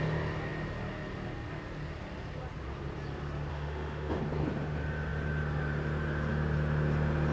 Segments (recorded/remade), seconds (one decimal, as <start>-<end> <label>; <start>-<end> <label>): 0.0-3.5 recorded; 3.5-4.2 remade; 4.2-7.3 recorded